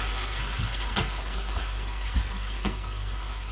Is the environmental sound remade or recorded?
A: remade